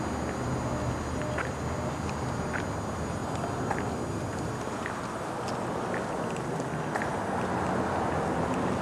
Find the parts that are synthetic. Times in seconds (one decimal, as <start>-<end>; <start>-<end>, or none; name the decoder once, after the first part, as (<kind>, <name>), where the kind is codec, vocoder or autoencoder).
none